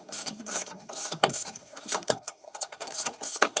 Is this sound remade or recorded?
remade